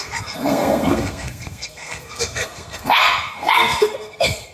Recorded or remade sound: remade